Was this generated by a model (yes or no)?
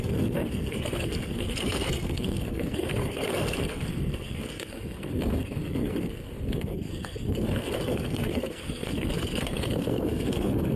yes